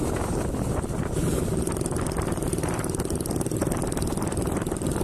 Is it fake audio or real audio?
real